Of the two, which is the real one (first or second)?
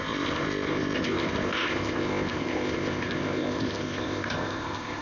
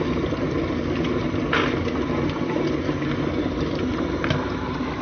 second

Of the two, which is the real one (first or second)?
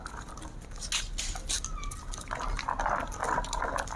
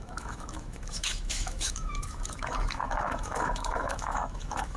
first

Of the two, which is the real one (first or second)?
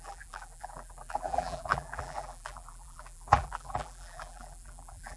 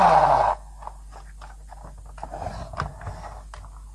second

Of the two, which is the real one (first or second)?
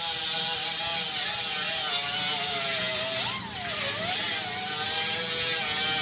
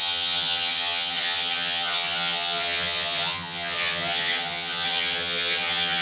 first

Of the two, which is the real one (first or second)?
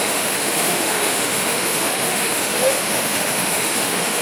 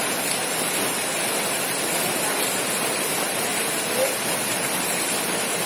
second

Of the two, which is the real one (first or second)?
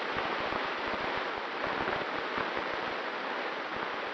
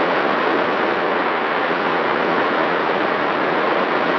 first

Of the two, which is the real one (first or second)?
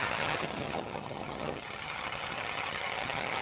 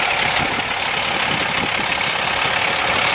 second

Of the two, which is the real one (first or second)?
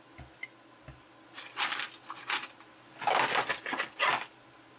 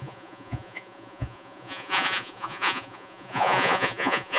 first